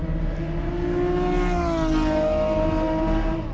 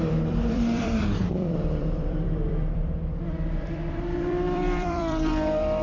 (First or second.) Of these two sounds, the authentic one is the first